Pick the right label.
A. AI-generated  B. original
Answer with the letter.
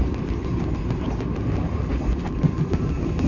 B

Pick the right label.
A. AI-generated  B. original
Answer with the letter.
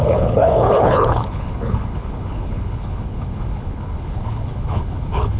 A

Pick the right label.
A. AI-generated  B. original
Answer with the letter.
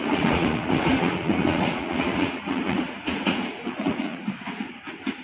A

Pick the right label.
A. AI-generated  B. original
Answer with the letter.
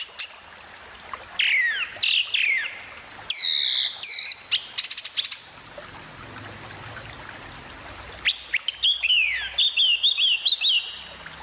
B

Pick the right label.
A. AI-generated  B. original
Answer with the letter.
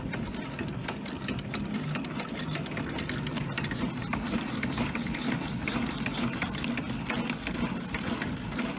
B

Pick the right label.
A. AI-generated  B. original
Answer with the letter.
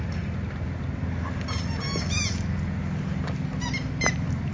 B